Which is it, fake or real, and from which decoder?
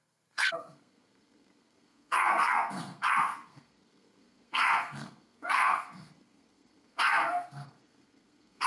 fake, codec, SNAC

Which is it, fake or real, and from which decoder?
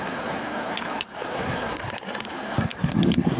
fake, codec, SNAC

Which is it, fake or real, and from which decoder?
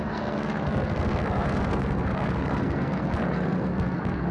fake, codec, SNAC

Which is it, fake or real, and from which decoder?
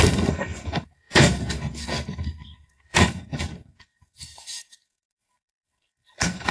fake, codec, SNAC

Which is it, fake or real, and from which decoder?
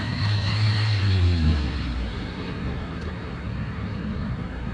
fake, codec, SNAC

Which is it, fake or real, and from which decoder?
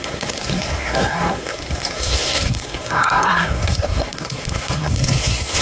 fake, codec, SNAC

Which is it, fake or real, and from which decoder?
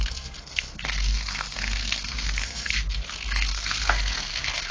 fake, codec, SNAC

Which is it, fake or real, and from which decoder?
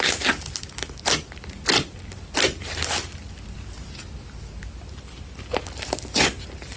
real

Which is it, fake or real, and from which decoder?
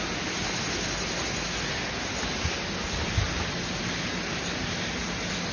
real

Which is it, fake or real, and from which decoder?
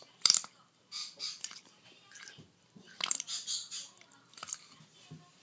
real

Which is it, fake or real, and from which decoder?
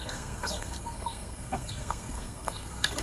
fake, codec, SNAC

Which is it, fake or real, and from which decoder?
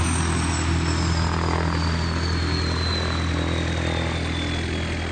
real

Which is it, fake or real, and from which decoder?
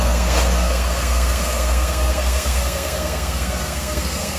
fake, codec, SNAC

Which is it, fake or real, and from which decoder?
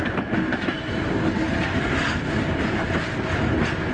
real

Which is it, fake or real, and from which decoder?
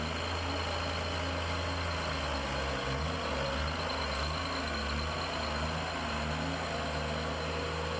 real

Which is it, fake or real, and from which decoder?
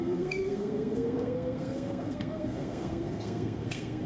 fake, codec, SNAC